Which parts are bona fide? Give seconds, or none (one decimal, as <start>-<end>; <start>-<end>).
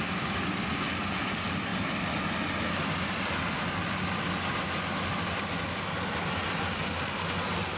0.0-7.8